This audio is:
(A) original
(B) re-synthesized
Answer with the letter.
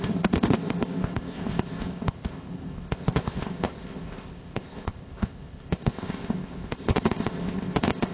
B